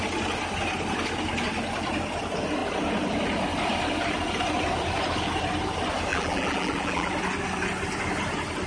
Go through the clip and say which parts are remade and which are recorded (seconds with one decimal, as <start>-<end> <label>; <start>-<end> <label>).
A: 0.0-6.1 recorded; 6.1-7.1 remade; 7.1-8.7 recorded